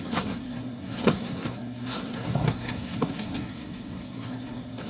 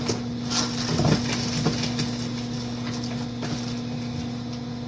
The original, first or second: second